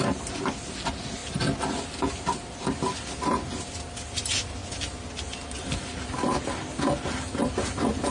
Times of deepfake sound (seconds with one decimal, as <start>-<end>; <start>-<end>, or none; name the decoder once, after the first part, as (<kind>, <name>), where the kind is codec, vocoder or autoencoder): none